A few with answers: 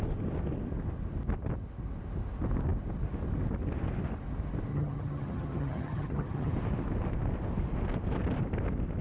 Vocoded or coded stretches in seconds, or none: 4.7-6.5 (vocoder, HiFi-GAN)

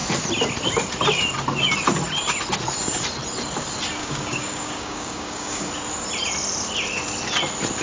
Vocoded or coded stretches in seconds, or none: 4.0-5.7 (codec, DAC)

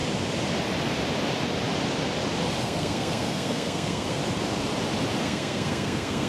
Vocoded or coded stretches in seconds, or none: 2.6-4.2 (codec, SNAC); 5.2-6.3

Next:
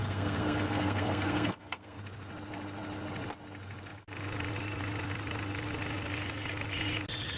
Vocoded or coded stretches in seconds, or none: 0.0-2.0 (codec, SNAC)